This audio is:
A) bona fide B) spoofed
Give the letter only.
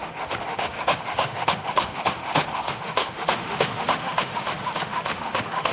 B